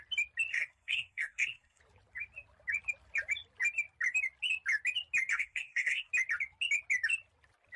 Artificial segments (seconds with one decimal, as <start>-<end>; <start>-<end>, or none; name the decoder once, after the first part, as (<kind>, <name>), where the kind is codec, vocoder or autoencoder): 0.5-1.8 (codec, SNAC); 5.3-6.1